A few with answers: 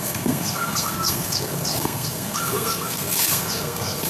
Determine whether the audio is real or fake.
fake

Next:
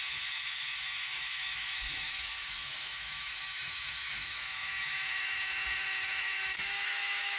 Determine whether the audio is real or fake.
fake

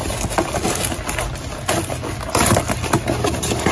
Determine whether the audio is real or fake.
real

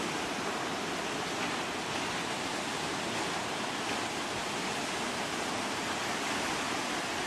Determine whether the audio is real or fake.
real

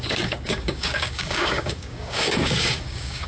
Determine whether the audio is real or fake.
fake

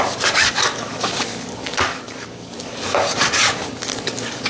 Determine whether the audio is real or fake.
fake